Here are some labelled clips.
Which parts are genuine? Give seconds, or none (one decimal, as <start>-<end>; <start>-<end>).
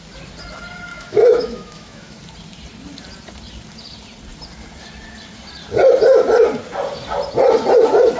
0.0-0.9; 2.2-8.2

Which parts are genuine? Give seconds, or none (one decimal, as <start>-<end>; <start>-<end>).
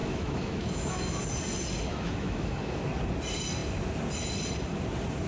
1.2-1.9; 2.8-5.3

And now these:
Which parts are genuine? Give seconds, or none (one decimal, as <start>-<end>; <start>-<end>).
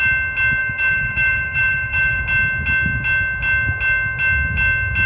0.0-0.6; 2.2-5.1